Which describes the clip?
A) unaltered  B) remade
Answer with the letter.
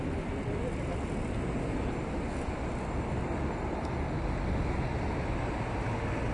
A